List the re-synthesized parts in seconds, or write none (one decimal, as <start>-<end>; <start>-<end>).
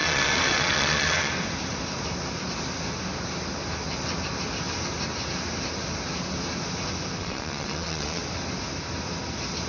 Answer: 0.0-1.3; 7.2-8.2